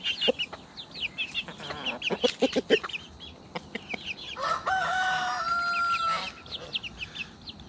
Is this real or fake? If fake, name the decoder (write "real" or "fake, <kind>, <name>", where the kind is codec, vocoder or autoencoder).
real